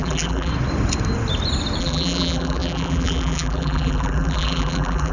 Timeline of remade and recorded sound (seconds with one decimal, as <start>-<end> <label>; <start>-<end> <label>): 0.0-0.5 remade; 0.5-1.8 recorded; 1.8-5.1 remade